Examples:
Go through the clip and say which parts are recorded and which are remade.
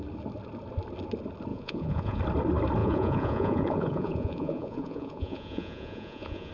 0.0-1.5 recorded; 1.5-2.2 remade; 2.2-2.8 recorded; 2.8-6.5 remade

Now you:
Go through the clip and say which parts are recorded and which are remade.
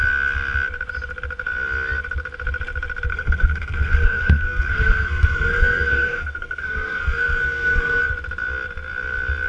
0.0-3.1 recorded; 3.1-8.0 remade; 8.0-9.5 recorded